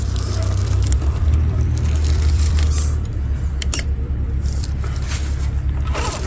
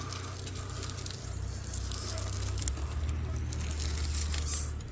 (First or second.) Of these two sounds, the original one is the second